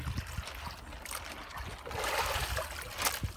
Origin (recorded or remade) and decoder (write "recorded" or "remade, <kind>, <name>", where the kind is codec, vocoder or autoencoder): recorded